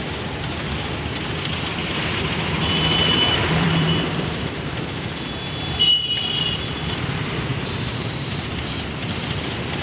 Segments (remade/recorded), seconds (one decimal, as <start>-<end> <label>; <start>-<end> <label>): 0.0-1.8 recorded; 1.8-4.8 remade; 4.8-7.5 recorded; 7.5-8.5 remade; 8.5-9.8 recorded